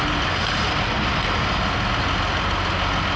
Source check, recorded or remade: recorded